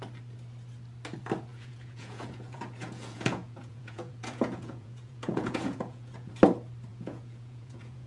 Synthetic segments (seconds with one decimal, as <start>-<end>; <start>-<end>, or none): 1.5-6.3; 6.9-8.1